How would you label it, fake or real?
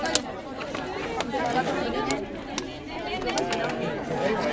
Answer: real